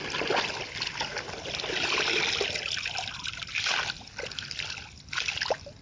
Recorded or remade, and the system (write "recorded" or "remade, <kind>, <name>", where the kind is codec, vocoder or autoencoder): recorded